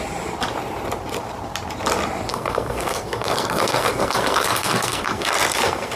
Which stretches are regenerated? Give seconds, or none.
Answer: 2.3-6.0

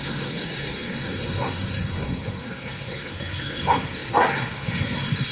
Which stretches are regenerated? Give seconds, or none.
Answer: 0.0-5.3